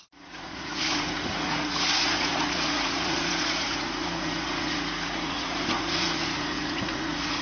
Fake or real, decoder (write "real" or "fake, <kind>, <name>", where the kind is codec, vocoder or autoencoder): fake, vocoder, Vocos